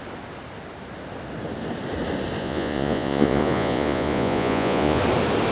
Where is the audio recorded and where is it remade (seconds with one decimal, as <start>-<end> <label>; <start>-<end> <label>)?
0.0-2.4 recorded; 2.4-5.0 remade; 5.0-5.5 recorded